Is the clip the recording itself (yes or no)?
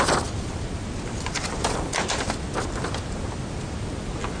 yes